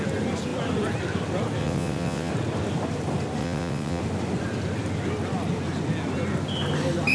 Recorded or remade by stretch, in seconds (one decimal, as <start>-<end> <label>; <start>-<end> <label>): 0.0-1.6 recorded; 1.6-2.3 remade; 2.3-3.4 recorded; 3.4-4.0 remade; 4.0-7.1 recorded